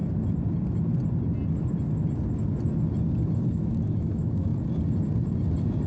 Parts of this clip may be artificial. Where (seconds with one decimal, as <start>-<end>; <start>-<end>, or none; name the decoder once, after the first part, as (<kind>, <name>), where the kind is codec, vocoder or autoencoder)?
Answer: 3.5-4.5 (autoencoder, DAC-VAE)